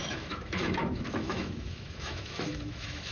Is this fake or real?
fake